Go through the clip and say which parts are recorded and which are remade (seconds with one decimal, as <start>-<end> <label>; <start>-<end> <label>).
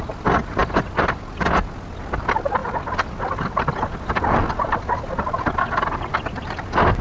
0.0-7.0 recorded